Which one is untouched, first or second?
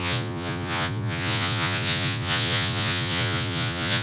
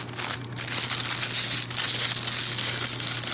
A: second